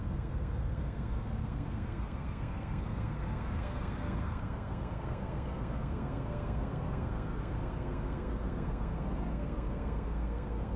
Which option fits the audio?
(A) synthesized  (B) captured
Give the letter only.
A